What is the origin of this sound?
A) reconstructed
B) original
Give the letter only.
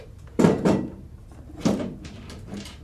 A